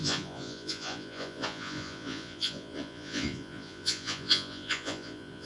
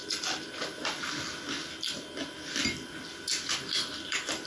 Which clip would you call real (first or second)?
second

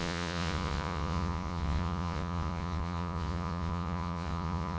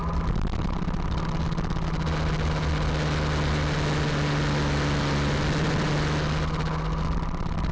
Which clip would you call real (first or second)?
second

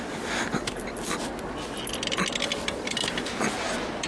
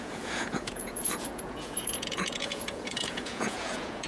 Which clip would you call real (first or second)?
first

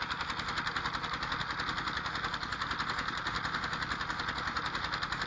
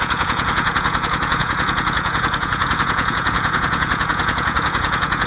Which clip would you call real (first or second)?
first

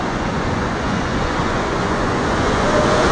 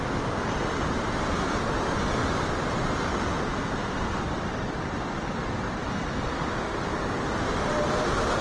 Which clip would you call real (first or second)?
second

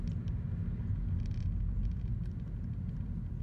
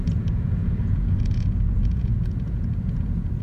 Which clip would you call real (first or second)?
first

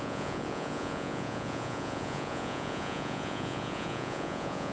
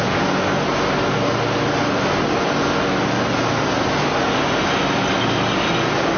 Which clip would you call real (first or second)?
second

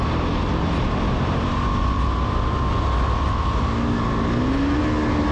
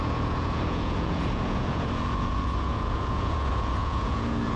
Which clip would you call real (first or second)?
first